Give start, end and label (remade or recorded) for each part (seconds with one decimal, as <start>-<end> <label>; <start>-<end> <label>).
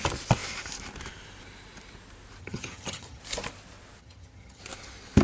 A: 0.0-2.4 recorded; 2.4-3.2 remade; 3.2-4.0 recorded; 4.0-4.6 remade; 4.6-5.2 recorded